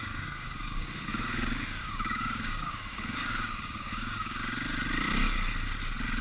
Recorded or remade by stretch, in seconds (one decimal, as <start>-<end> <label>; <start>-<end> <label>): 0.0-4.4 remade; 4.4-6.2 recorded